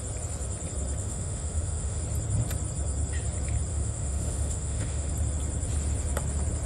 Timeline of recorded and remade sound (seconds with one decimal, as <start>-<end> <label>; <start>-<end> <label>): 0.0-1.0 recorded; 1.0-2.0 remade; 2.0-3.7 recorded; 3.7-5.1 remade; 5.1-6.7 recorded